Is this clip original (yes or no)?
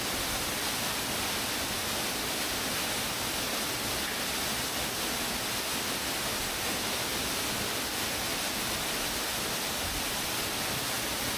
yes